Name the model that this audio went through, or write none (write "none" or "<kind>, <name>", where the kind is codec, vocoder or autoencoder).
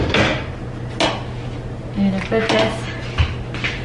none